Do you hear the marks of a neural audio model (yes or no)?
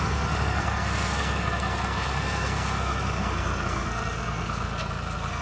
yes